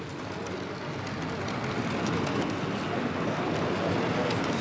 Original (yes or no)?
yes